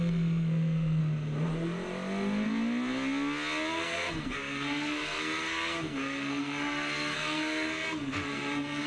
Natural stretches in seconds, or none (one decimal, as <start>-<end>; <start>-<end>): 1.0-3.7